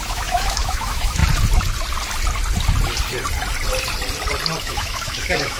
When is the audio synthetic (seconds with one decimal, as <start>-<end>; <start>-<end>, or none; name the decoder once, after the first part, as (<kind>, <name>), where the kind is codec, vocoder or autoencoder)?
0.0-1.2 (autoencoder, DAC-VAE); 4.6-5.6